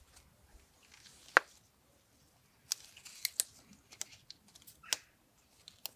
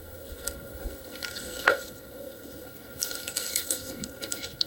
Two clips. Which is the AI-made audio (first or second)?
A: second